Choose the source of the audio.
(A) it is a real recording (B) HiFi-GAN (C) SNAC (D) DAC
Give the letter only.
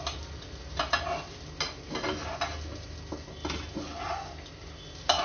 A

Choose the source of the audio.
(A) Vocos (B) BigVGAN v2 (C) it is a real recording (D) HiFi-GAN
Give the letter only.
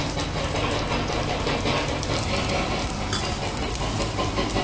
C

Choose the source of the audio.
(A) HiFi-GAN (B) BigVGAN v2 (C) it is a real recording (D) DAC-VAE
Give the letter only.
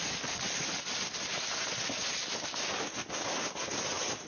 C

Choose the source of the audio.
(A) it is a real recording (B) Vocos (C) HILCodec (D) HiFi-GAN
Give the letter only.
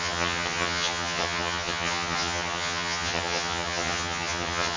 D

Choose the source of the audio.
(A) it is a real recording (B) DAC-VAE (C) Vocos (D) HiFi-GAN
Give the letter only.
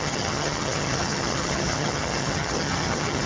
D